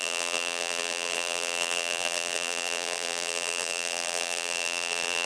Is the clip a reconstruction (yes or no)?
yes